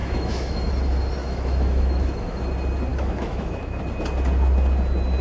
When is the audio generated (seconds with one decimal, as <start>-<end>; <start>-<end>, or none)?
0.0-0.7; 1.2-2.4; 2.9-3.8